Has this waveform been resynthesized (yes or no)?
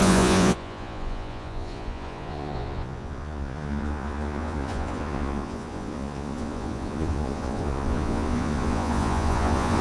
yes